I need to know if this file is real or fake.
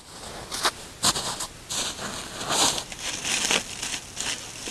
real